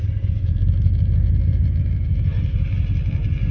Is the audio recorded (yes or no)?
yes